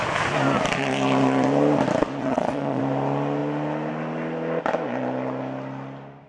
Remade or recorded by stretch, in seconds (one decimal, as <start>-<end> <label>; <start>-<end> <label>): 0.0-2.2 recorded; 2.2-2.8 remade; 2.8-6.3 recorded